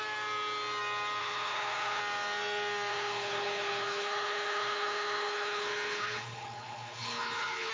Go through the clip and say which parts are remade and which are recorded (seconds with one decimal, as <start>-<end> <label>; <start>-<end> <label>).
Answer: 0.0-1.2 recorded; 1.2-2.0 remade; 2.0-2.9 recorded; 2.9-7.7 remade